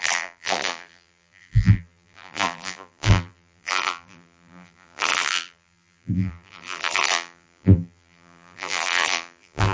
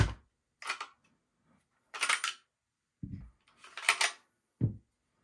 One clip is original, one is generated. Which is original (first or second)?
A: second